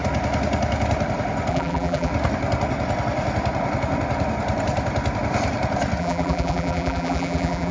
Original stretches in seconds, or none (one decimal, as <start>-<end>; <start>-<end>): 0.0-1.5; 2.1-6.0